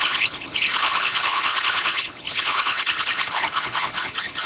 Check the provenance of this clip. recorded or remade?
remade